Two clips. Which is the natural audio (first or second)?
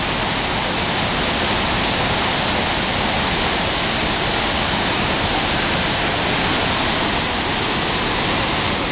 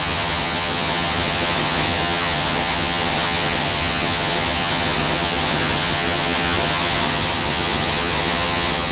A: first